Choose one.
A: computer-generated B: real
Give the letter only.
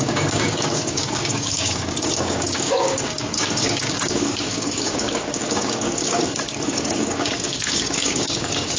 A